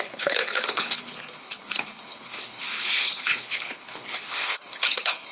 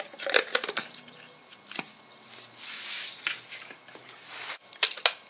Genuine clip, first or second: second